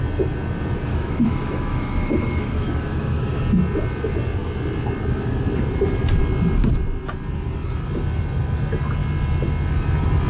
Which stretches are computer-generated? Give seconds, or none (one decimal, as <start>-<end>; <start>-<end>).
0.9-3.4